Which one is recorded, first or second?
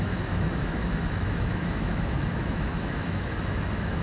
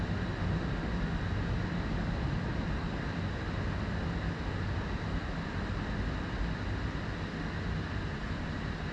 second